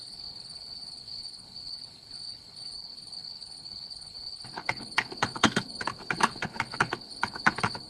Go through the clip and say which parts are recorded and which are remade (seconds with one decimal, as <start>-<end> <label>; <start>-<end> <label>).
0.0-7.9 remade

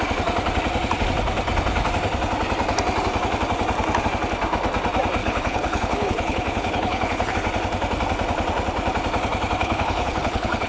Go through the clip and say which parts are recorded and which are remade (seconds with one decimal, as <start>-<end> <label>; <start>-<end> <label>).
0.0-5.2 recorded; 5.2-7.3 remade; 7.3-9.6 recorded; 9.6-10.7 remade

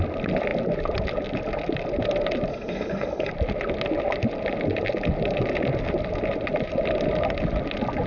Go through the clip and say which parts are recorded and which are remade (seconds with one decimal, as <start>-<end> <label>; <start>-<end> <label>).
0.0-2.5 recorded; 2.5-3.3 remade; 3.3-8.1 recorded

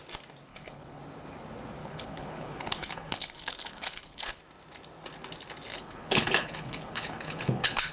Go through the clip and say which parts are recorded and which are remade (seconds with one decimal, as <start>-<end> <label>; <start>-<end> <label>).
0.0-0.5 recorded; 0.5-1.0 remade; 1.0-1.8 recorded; 1.8-4.4 remade; 4.4-5.7 recorded; 5.7-7.9 remade

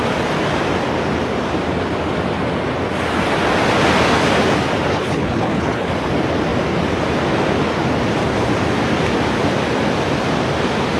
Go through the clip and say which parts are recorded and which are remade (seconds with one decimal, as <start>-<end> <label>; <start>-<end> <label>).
0.0-4.9 recorded; 4.9-5.9 remade; 5.9-11.0 recorded

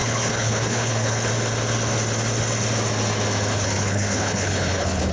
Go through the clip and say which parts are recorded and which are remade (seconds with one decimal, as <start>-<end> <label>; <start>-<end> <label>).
0.0-1.3 remade; 1.3-3.5 recorded; 3.5-5.1 remade

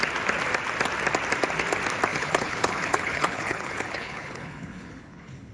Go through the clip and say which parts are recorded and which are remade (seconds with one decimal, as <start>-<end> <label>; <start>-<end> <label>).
0.0-2.1 recorded; 2.1-5.5 remade

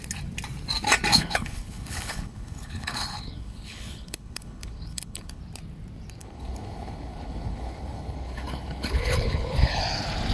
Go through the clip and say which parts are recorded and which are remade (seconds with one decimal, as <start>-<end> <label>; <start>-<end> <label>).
0.0-1.1 recorded; 1.1-5.4 remade; 5.4-6.2 recorded; 6.2-9.8 remade; 9.8-10.3 recorded